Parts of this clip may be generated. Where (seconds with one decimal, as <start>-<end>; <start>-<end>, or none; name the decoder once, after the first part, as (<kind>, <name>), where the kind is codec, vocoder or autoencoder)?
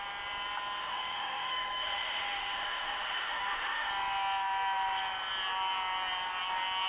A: 0.8-3.9 (autoencoder, DAC-VAE)